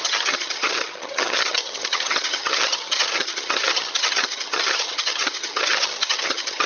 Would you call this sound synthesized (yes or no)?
yes